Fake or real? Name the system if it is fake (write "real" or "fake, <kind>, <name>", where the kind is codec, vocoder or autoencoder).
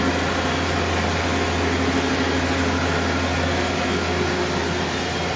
real